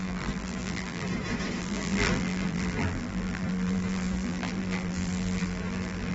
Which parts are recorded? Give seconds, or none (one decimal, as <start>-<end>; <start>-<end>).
1.1-1.6